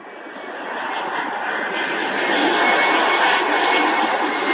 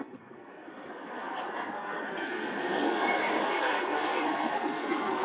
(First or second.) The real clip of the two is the first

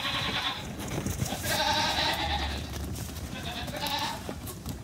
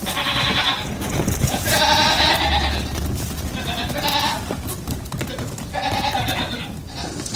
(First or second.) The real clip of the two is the second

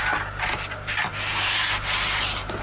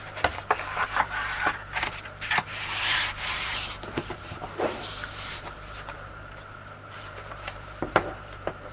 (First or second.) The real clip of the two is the first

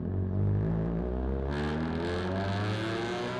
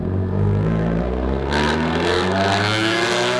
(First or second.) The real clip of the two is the first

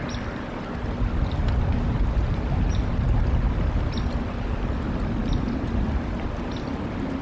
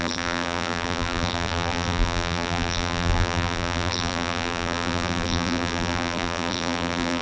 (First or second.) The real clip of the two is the first